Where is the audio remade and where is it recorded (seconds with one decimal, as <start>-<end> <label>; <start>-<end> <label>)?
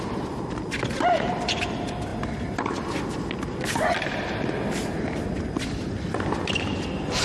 0.0-7.2 recorded